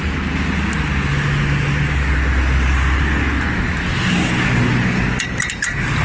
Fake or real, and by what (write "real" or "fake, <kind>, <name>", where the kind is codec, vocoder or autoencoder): real